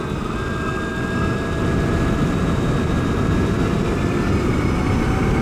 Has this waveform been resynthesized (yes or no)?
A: no